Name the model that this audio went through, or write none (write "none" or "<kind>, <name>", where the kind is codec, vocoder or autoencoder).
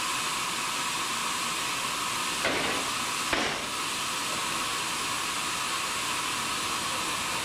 none